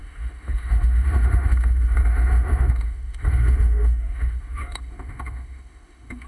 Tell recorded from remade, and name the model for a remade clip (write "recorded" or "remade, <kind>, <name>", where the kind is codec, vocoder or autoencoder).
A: remade, autoencoder, DAC-VAE